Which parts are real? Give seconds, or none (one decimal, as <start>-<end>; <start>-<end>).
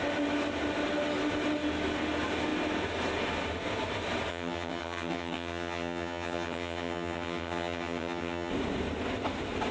0.0-4.3; 8.5-9.7